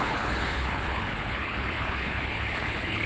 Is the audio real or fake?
fake